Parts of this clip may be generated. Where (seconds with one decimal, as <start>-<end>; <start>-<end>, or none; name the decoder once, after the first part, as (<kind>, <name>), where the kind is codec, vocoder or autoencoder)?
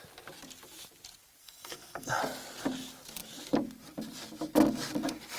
1.4-2.2 (codec, SNAC)